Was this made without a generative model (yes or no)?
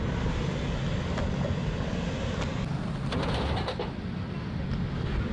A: yes